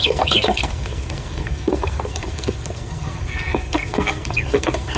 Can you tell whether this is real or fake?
fake